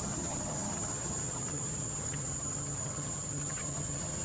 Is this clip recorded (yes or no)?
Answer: no